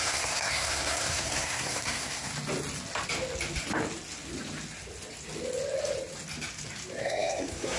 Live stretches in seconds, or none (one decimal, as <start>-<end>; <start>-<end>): 2.3-7.0